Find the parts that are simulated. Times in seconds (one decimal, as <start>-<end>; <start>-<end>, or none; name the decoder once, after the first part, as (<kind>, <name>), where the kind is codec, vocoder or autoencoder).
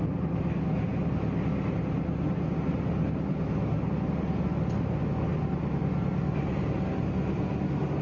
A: none